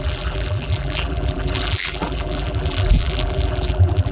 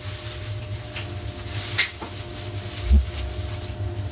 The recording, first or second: second